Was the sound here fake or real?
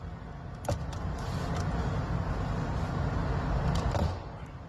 real